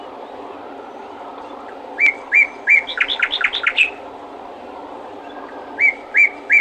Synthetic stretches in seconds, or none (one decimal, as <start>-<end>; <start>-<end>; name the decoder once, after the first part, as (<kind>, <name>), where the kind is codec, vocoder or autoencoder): none